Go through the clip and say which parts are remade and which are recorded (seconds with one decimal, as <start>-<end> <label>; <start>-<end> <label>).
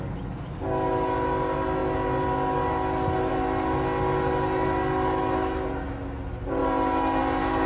0.0-7.7 recorded